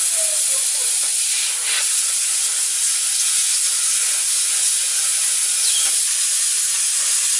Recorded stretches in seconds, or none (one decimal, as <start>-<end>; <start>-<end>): 0.0-0.8; 2.0-3.4; 4.4-7.4